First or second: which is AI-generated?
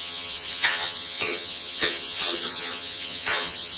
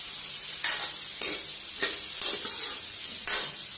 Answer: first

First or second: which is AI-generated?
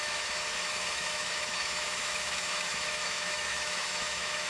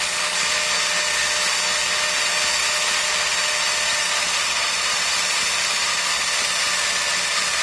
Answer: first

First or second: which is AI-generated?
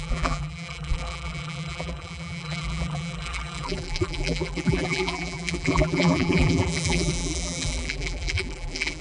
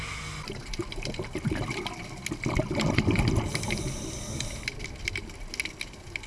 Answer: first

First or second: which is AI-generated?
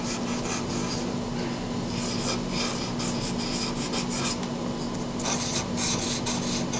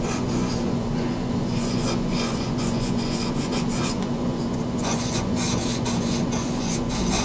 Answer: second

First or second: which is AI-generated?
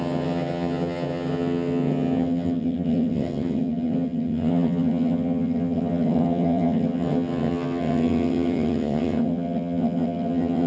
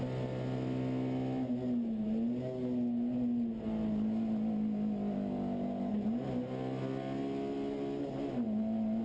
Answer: first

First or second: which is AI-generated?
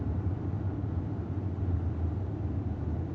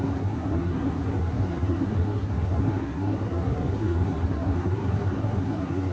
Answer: second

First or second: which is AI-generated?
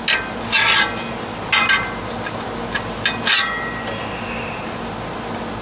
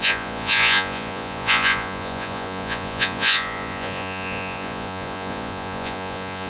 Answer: second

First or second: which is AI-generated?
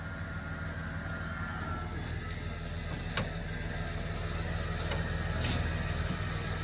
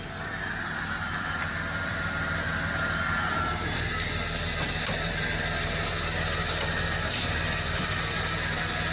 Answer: second